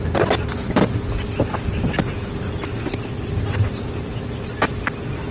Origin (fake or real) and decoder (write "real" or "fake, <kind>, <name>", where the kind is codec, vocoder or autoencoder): real